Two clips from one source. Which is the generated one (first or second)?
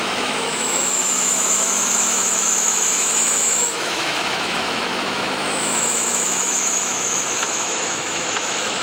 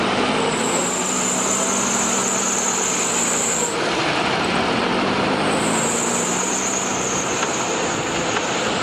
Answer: first